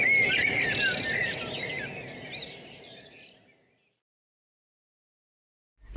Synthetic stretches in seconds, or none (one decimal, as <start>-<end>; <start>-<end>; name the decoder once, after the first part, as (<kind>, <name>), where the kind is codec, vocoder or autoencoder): none